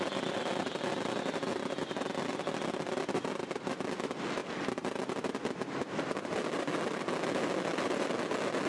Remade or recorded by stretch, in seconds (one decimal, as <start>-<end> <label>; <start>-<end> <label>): 0.0-8.7 recorded